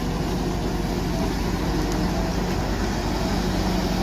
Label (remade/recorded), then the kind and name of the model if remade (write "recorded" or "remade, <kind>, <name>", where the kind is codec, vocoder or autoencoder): recorded